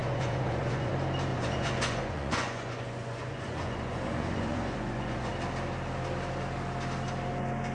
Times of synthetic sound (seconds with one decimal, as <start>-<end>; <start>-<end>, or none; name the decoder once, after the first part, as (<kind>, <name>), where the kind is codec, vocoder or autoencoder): 0.0-0.9 (vocoder, Vocos); 1.3-5.3